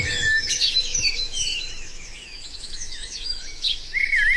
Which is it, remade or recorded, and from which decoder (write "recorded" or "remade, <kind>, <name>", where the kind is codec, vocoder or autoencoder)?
remade, autoencoder, DAC-VAE